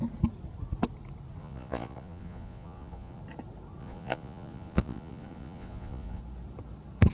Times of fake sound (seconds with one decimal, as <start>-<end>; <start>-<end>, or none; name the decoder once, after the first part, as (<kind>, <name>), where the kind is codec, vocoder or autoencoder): 1.4-3.2 (vocoder, Vocos); 3.8-6.2